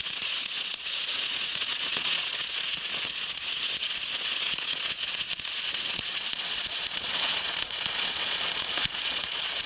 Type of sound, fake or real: fake